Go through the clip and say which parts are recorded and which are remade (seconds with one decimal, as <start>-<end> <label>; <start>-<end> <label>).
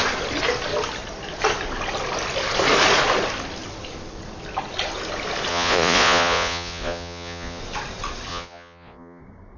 0.0-5.5 recorded; 5.5-7.6 remade; 7.6-8.3 recorded; 8.3-9.2 remade; 9.2-9.6 recorded